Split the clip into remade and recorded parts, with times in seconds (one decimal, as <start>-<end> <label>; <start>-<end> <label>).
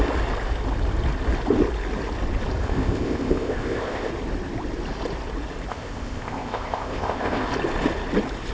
0.0-2.6 recorded; 2.6-4.1 remade; 4.1-5.7 recorded; 5.7-7.5 remade; 7.5-8.5 recorded